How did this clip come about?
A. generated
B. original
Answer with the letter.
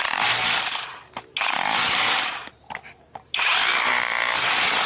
A